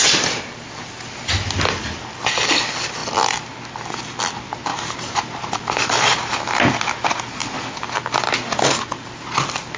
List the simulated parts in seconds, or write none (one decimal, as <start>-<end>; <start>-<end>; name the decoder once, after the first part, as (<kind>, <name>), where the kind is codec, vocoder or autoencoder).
4.7-6.6 (vocoder, BigVGAN v2)